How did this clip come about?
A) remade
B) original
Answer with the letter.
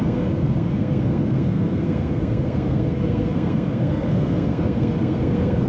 A